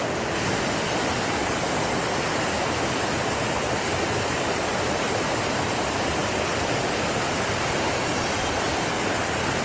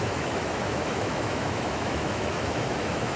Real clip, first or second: first